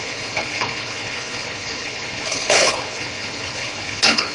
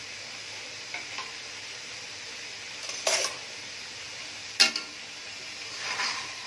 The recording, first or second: second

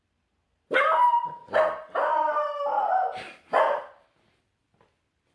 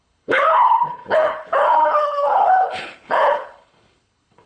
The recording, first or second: first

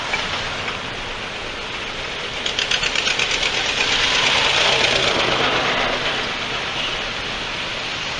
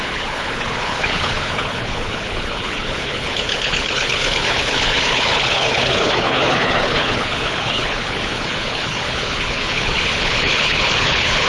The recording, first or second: first